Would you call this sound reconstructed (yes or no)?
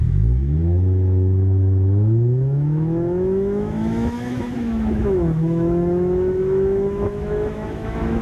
yes